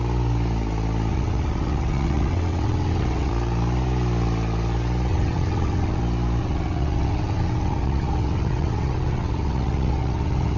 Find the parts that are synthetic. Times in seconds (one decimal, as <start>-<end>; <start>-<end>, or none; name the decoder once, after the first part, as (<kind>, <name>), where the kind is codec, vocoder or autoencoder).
1.1-3.3 (vocoder, WaveNeXt); 5.1-6.0; 6.4-10.6

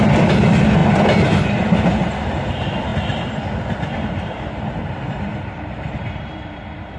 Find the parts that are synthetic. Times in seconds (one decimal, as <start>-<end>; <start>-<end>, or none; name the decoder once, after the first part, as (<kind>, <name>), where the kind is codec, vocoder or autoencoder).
2.9-7.0 (vocoder, BigVGAN v2)

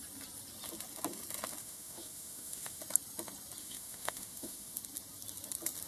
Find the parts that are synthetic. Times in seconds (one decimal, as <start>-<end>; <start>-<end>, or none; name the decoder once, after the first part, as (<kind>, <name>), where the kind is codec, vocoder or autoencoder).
1.6-2.8 (autoencoder, DAC-VAE); 3.6-4.8

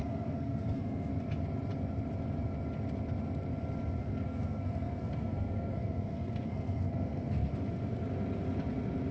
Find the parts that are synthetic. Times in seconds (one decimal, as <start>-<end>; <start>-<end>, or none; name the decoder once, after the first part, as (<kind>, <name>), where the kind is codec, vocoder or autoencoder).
0.0-1.1 (codec, SNAC); 4.0-7.5

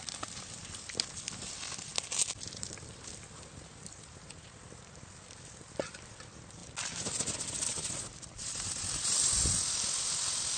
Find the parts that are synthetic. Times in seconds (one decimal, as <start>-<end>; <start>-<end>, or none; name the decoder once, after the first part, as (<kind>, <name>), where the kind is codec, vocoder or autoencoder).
none

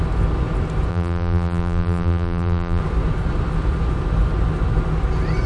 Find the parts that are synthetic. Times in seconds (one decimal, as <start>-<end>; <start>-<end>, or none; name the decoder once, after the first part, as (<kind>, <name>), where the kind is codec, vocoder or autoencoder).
0.9-2.8 (vocoder, BigVGAN v2)

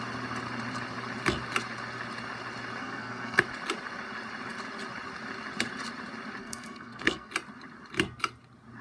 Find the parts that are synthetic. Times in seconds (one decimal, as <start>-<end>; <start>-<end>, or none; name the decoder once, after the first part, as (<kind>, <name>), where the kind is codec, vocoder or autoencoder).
2.8-3.4 (codec, SNAC); 6.4-7.3